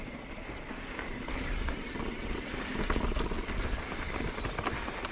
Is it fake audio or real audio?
real